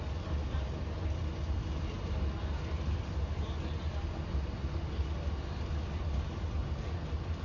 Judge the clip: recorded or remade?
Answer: recorded